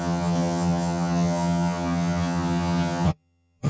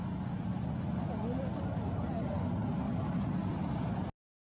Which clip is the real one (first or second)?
second